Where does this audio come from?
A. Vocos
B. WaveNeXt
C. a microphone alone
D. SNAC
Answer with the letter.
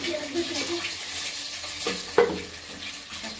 C